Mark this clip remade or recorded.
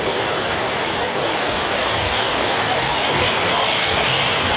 remade